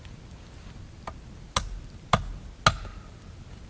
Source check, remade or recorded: recorded